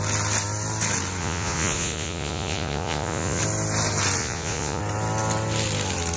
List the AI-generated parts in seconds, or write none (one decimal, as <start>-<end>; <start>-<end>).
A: 1.2-3.4; 4.2-4.8